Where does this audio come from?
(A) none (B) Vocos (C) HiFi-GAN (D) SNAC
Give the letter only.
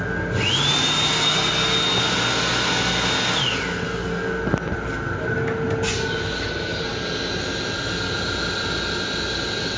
A